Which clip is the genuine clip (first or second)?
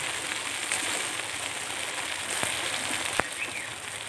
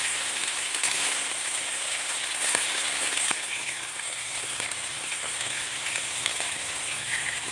first